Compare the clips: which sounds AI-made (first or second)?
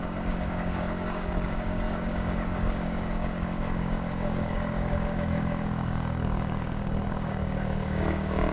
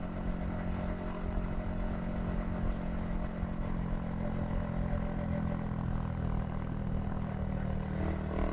first